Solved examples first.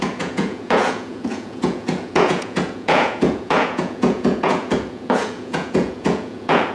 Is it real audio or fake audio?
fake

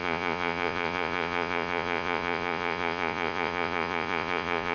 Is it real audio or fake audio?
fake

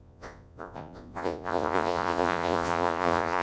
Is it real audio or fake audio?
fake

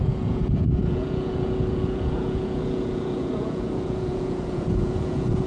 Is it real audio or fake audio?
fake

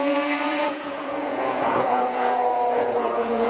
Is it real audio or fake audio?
fake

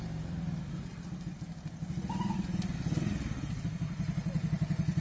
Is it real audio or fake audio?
real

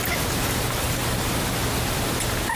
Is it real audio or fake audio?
real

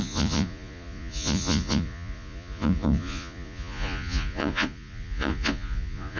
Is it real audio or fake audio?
fake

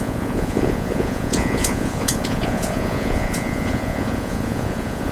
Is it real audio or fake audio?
fake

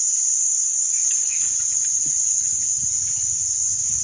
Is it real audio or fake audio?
real